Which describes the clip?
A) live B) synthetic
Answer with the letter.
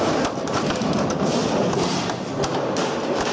A